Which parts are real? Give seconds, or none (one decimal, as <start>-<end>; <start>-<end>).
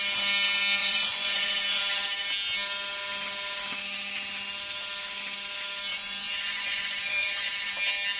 0.0-0.8; 1.8-5.9; 7.7-8.2